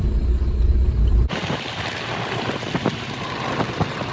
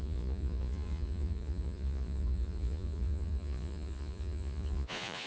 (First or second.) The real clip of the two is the first